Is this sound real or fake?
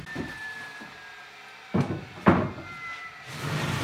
real